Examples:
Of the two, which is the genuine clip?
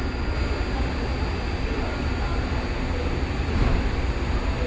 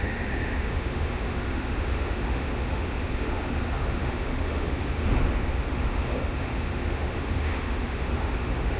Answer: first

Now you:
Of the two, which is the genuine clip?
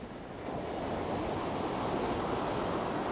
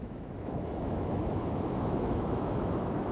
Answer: first